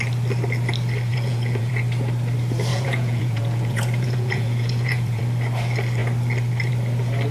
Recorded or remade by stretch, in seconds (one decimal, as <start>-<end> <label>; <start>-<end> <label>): 0.0-1.1 recorded; 1.1-1.7 remade; 1.7-2.7 recorded; 2.7-5.2 remade; 5.2-7.3 recorded

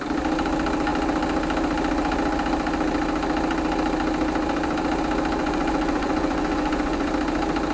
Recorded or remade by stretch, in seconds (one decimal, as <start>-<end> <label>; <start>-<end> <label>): 0.0-5.4 recorded; 5.4-7.1 remade; 7.1-7.7 recorded

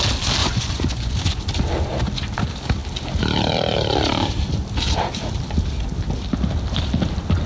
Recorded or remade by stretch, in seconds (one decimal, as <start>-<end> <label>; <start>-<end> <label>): 0.0-0.4 recorded; 0.4-1.4 remade; 1.4-7.5 recorded

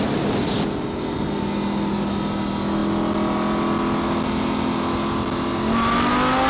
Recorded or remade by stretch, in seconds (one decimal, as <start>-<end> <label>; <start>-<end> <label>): 0.0-6.5 recorded

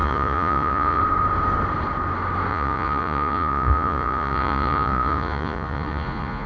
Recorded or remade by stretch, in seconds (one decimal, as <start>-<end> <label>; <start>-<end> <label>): 0.0-1.0 remade; 1.0-2.5 recorded; 2.5-6.5 remade

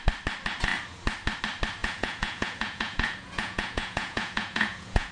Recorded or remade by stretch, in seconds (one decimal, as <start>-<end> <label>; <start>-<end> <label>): 0.0-1.8 recorded; 1.8-5.1 remade

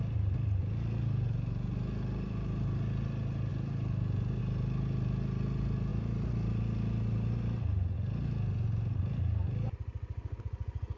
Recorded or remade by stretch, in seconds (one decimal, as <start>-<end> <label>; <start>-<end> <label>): 0.0-11.0 recorded

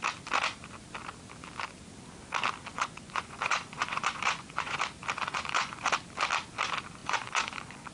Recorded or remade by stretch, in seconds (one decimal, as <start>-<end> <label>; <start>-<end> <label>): 0.0-2.7 recorded; 2.7-4.8 remade; 4.8-5.2 recorded; 5.2-5.8 remade; 5.8-7.0 recorded; 7.0-7.9 remade